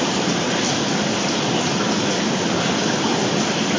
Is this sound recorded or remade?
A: recorded